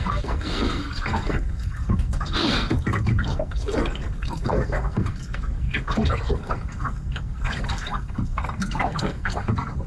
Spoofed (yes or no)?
yes